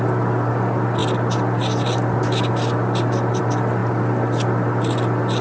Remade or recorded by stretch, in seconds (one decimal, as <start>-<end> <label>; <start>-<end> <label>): 0.0-5.4 recorded